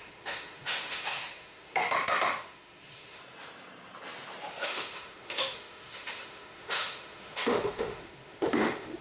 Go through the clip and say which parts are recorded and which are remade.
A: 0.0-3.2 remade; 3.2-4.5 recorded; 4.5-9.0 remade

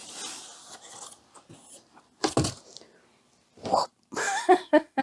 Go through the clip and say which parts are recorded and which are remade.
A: 0.0-4.2 recorded; 4.2-5.0 remade

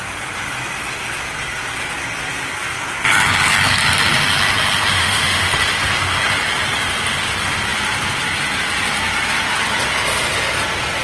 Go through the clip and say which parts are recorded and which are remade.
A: 0.0-4.9 recorded; 4.9-5.5 remade; 5.5-11.0 recorded